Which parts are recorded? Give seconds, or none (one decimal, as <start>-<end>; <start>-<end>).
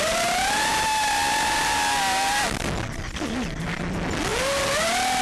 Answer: 0.0-5.2